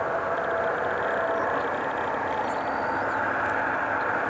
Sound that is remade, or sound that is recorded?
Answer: recorded